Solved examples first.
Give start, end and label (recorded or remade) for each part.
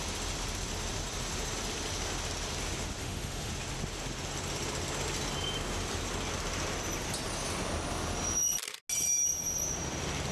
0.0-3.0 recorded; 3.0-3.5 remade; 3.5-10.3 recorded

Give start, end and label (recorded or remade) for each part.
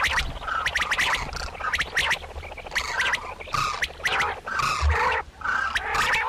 0.0-6.3 recorded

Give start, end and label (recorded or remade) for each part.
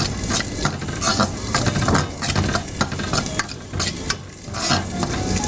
0.0-5.5 recorded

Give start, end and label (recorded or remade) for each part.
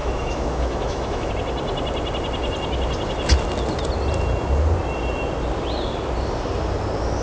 0.0-1.3 remade; 1.3-7.2 recorded